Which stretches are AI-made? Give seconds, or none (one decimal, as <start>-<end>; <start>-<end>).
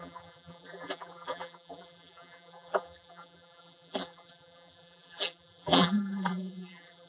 0.0-7.1